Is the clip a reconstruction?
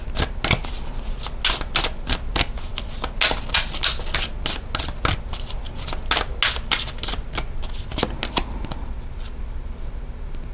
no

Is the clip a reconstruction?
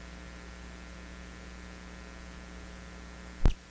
no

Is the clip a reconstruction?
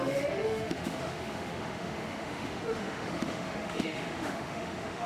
yes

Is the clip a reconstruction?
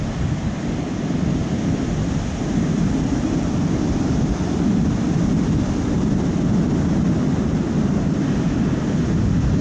no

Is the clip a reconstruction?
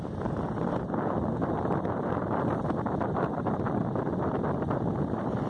no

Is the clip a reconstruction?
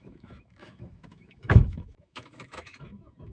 yes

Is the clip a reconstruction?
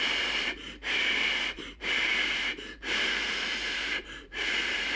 yes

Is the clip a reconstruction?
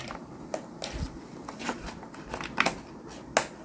no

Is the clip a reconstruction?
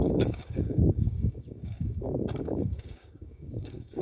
yes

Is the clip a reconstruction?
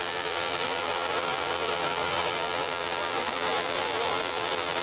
yes